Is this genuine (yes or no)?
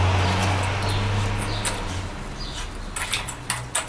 yes